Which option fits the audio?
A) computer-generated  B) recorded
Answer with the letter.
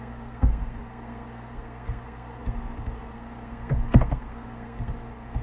A